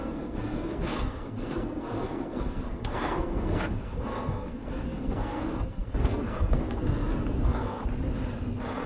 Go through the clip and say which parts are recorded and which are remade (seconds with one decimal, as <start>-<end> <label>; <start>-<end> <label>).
0.0-7.8 remade; 7.8-8.9 recorded